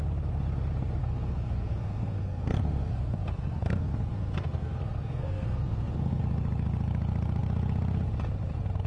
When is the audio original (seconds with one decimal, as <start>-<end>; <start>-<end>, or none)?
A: 0.0-1.0; 6.2-8.9